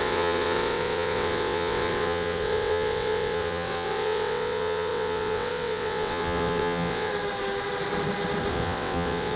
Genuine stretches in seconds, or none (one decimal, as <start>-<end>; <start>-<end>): 7.1-8.5